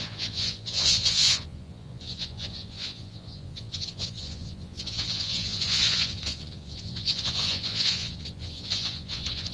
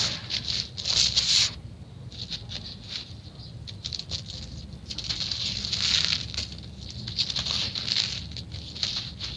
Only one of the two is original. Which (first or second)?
second